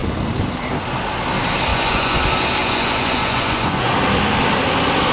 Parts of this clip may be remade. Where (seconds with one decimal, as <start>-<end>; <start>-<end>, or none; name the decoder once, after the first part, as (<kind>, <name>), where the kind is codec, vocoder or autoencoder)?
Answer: 1.7-2.2 (vocoder, Vocos); 2.6-3.9